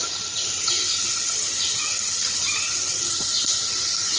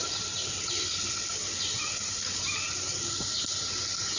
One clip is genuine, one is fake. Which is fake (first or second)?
first